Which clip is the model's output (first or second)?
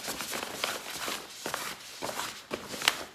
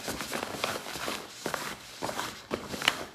second